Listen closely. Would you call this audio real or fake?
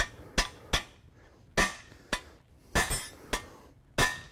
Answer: real